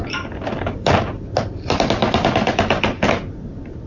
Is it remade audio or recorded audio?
recorded